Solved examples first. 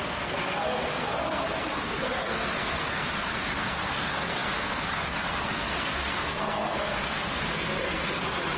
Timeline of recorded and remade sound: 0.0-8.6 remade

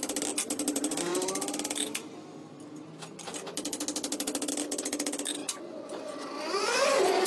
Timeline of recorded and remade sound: 0.0-5.4 recorded; 5.4-7.3 remade